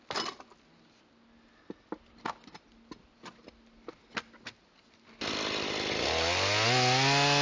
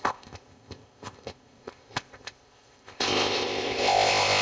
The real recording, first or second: first